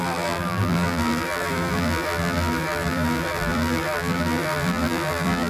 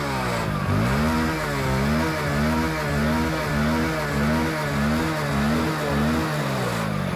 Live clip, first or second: second